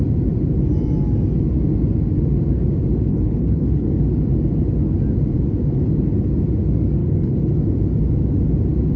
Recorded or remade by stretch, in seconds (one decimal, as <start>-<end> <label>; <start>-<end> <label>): 0.0-3.1 recorded; 3.1-3.9 remade; 3.9-7.0 recorded; 7.0-7.5 remade; 7.5-9.0 recorded